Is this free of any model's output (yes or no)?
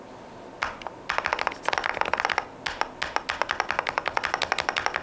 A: yes